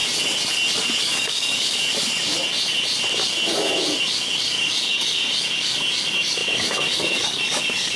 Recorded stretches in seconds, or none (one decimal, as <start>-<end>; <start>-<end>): 0.0-1.0; 1.9-4.0